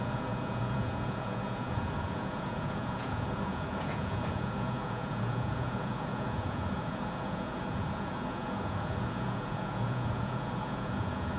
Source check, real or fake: fake